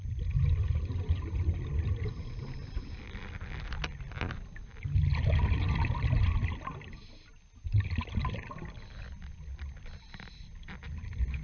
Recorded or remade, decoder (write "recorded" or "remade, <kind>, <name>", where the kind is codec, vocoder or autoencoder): recorded